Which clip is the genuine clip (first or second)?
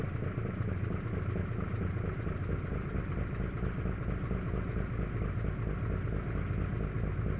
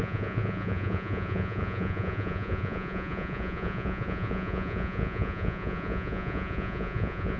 first